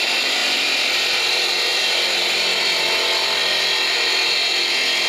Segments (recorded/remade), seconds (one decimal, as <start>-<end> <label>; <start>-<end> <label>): 0.0-5.1 recorded

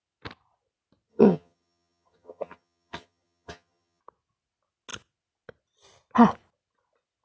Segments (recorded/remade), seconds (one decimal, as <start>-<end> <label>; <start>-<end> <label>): 0.0-1.1 recorded; 1.1-4.0 remade; 4.0-7.2 recorded